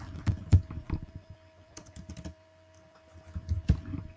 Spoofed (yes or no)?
yes